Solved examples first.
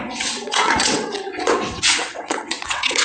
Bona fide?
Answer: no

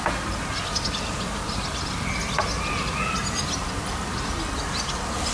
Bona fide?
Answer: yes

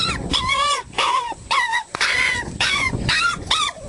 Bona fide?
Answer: no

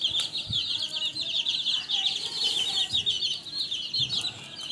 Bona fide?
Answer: yes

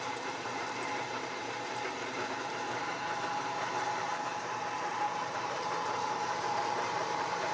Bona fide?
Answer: no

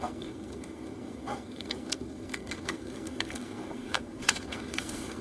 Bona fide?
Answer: no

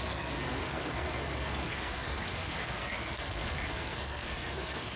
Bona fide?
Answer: no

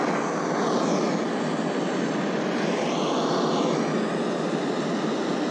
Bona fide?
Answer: yes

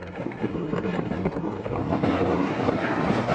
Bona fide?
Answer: no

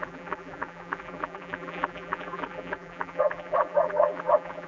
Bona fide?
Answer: no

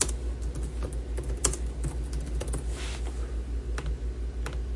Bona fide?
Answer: yes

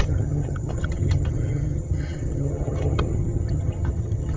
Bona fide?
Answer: no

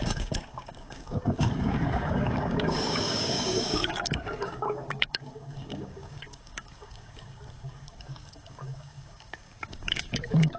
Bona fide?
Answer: no